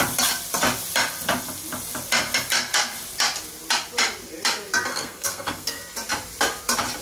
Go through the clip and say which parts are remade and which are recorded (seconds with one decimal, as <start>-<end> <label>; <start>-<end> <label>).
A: 0.0-4.9 recorded; 4.9-5.8 remade; 5.8-7.0 recorded